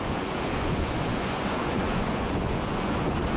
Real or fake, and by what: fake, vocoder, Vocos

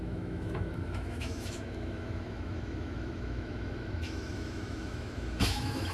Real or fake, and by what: fake, autoencoder, DAC-VAE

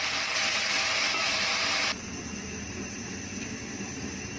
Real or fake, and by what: real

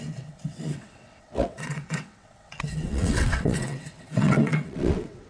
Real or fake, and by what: fake, vocoder, WaveNeXt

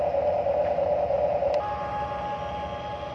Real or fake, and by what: real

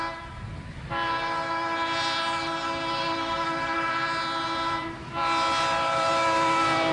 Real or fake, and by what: real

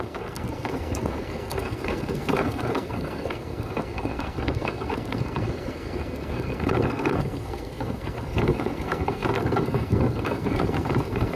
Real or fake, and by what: fake, codec, SNAC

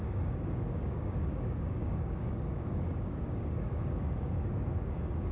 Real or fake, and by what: fake, codec, DAC